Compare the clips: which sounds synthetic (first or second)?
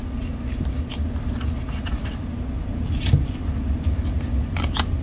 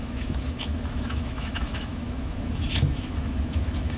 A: second